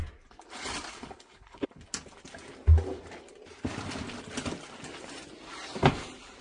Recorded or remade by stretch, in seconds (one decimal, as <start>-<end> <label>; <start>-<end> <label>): 0.0-0.9 recorded; 0.9-1.8 remade; 1.8-6.4 recorded